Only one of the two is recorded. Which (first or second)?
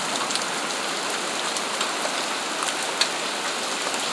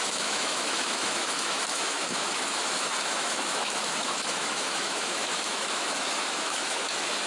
first